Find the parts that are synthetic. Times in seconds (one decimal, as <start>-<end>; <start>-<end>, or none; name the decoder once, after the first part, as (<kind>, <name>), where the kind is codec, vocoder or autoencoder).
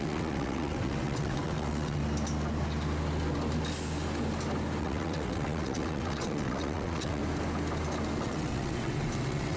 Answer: 0.0-2.0 (vocoder, WaveNeXt); 4.8-7.2; 8.2-9.6